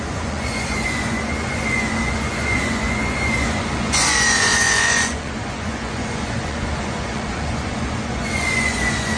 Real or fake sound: fake